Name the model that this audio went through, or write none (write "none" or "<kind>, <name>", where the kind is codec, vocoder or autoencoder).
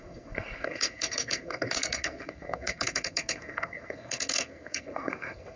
codec, SNAC